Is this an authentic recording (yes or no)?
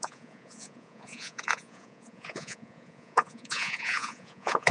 no